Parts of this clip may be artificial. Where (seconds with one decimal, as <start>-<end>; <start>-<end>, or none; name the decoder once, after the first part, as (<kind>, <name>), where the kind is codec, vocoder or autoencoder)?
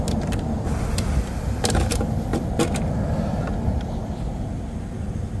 none